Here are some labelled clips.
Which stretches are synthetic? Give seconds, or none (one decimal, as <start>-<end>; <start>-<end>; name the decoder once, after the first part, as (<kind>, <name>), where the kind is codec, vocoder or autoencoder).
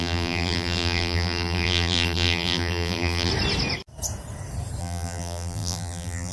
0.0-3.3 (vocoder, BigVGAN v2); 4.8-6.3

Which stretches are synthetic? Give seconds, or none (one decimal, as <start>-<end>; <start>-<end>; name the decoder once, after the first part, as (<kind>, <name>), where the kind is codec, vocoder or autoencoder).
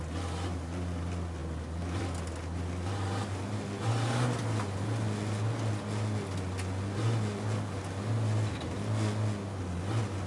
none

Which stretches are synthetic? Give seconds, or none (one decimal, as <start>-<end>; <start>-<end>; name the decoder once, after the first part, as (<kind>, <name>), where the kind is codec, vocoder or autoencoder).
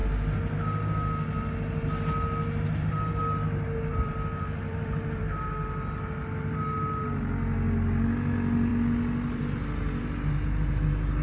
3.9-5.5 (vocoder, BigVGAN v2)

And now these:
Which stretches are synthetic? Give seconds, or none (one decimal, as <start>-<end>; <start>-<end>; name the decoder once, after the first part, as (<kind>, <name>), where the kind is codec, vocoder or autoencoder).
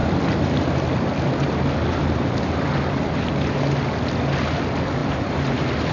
0.0-3.5 (vocoder, BigVGAN v2); 5.0-5.9